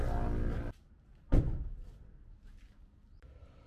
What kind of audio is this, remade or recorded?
recorded